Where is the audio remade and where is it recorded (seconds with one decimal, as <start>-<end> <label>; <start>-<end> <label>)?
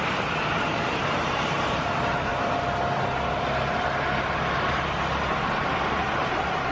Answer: 0.0-2.3 remade; 2.3-6.3 recorded; 6.3-6.7 remade